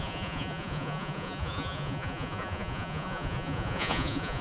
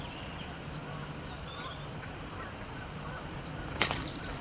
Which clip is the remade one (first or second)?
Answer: first